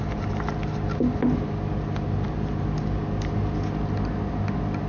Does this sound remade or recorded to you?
recorded